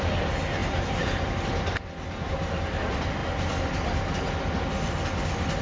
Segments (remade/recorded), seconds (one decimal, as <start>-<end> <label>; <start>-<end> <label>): 0.0-0.6 recorded; 0.6-1.5 remade; 1.5-5.6 recorded